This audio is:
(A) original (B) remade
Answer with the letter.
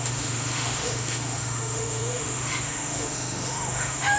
B